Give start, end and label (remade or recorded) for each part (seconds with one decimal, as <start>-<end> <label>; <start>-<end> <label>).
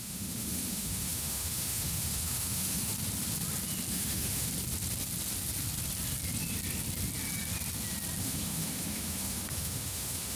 0.0-2.9 remade; 2.9-3.9 recorded; 3.9-4.5 remade; 4.5-8.2 recorded; 8.2-10.4 remade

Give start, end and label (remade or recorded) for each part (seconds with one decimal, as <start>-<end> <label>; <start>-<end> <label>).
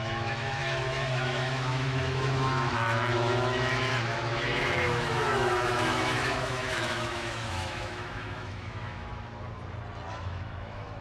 0.0-9.1 remade; 9.1-10.1 recorded; 10.1-11.0 remade